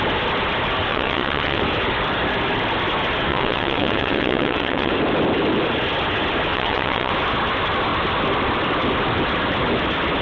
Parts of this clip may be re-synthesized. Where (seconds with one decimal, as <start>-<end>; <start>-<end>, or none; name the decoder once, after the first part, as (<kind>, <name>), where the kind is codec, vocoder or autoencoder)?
0.9-1.6 (vocoder, WaveNeXt); 3.3-4.9; 6.5-7.1